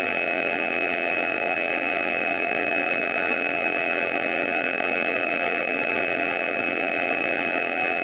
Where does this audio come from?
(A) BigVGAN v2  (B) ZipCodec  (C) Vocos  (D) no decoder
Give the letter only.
A